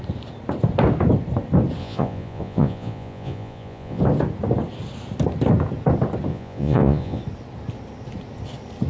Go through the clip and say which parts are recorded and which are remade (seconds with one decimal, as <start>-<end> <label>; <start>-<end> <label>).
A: 0.0-1.8 recorded; 1.8-4.0 remade; 4.0-6.3 recorded; 6.3-7.2 remade; 7.2-8.9 recorded